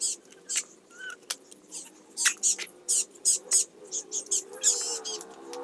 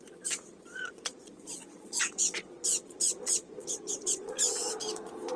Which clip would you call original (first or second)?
first